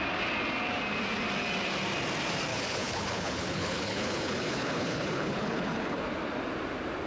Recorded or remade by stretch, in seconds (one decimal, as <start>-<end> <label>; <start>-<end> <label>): 0.0-2.5 recorded; 2.5-6.0 remade; 6.0-7.1 recorded